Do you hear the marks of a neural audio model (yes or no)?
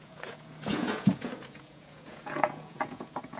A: yes